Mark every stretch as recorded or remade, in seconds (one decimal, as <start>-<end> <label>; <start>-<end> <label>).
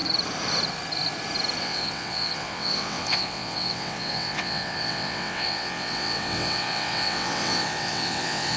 0.0-1.6 recorded; 1.6-8.6 remade